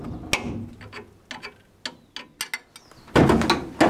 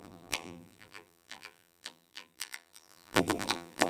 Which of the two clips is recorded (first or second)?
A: first